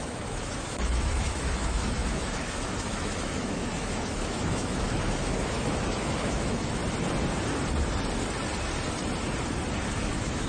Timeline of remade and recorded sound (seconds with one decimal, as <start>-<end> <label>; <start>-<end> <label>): 0.0-6.8 remade; 6.8-10.1 recorded; 10.1-10.5 remade